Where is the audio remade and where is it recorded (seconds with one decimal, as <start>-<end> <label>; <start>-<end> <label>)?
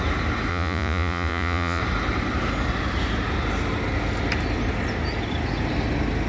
0.0-0.5 recorded; 0.5-1.8 remade; 1.8-6.3 recorded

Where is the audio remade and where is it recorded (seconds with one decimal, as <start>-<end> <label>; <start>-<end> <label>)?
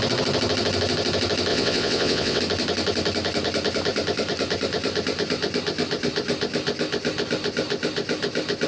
0.0-1.5 recorded; 1.5-2.4 remade; 2.4-8.7 recorded